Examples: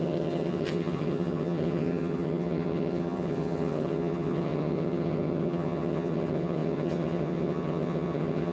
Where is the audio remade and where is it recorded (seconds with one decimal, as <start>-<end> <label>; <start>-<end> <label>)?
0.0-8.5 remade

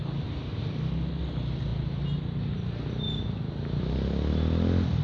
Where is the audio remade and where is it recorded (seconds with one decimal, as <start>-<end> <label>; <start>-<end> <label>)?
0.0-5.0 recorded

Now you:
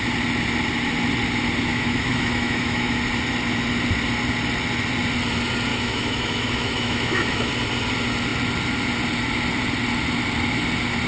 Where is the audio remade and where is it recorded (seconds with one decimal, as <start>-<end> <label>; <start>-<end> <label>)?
0.0-1.7 recorded; 1.7-2.9 remade; 2.9-5.7 recorded; 5.7-7.5 remade; 7.5-11.1 recorded

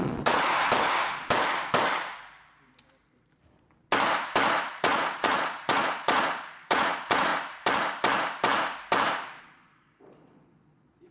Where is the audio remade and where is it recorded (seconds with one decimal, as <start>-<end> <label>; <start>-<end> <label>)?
0.0-0.5 remade; 0.5-4.7 recorded; 4.7-7.3 remade; 7.3-9.4 recorded; 9.4-11.1 remade